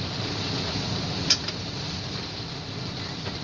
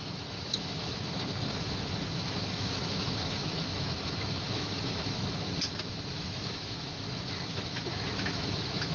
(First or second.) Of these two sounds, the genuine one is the first